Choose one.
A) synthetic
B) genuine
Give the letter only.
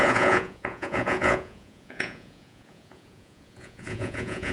A